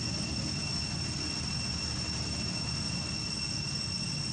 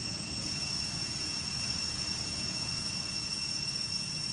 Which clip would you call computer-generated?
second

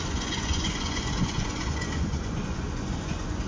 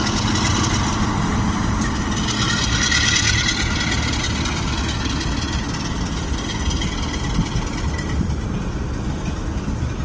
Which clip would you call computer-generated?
first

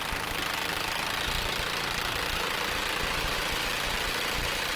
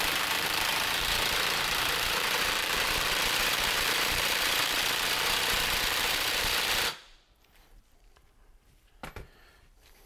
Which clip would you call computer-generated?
second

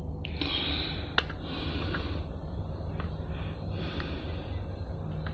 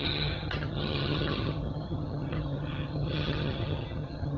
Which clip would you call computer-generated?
second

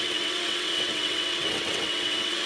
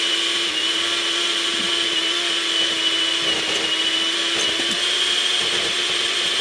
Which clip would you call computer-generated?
first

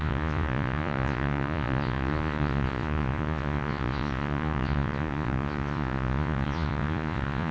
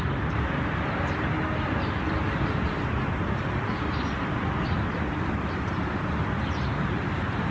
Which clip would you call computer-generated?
first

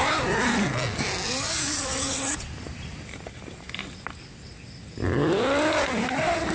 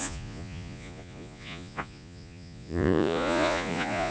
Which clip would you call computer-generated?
second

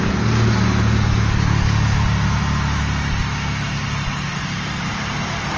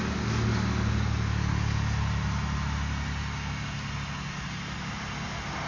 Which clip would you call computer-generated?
first